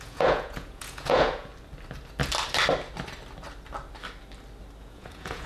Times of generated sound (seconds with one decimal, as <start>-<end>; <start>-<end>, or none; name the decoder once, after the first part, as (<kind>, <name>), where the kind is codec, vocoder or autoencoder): 0.0-1.5 (vocoder, Vocos); 4.8-5.5